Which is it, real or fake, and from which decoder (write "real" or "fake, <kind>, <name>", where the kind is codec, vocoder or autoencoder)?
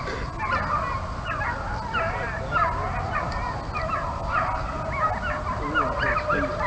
real